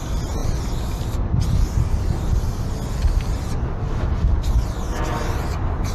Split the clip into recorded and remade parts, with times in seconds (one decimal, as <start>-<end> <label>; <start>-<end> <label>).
0.0-5.9 recorded